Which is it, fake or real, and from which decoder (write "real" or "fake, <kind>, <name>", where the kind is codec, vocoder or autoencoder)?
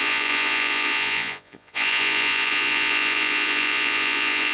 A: fake, vocoder, Vocos